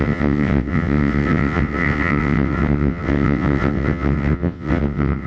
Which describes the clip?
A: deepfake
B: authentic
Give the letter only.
A